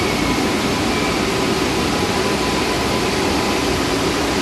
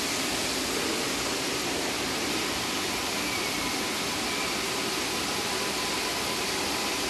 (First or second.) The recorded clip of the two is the first